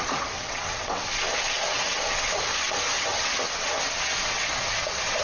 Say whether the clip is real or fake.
fake